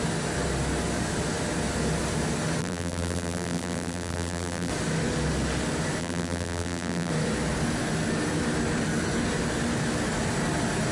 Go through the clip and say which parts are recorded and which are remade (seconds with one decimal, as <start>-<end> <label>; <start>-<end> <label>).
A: 0.0-2.6 recorded; 2.6-4.7 remade; 4.7-6.0 recorded; 6.0-7.1 remade; 7.1-10.9 recorded